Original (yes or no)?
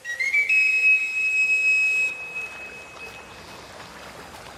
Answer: yes